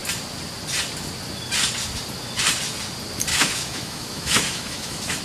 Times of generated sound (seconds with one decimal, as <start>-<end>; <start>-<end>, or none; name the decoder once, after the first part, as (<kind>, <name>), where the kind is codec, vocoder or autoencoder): 3.3-5.2 (autoencoder, DAC-VAE)